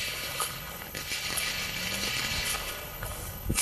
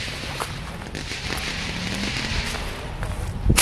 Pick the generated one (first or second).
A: first